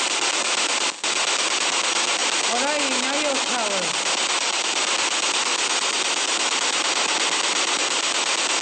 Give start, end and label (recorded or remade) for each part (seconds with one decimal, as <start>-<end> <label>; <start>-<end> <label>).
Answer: 0.0-8.6 recorded